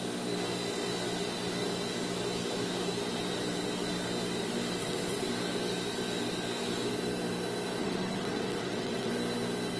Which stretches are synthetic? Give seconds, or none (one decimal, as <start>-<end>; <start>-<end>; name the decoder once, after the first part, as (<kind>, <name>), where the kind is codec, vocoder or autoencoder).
4.8-5.3 (vocoder, WaveNeXt); 7.8-9.1